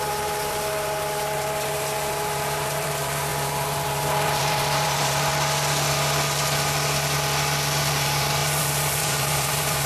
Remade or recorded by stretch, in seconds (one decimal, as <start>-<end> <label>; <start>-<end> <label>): 0.0-5.3 remade; 5.3-7.9 recorded; 7.9-9.9 remade